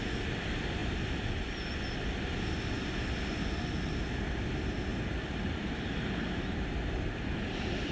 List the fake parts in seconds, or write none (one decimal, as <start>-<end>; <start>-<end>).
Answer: 4.9-7.9